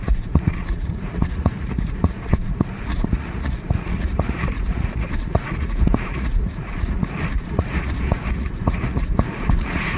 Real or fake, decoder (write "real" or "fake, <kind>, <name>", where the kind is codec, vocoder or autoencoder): fake, vocoder, Vocos